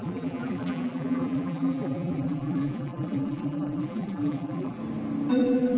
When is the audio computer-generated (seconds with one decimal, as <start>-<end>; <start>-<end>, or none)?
0.0-4.8; 5.3-5.8